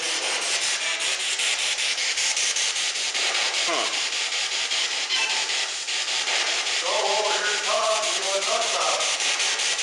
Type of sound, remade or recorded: remade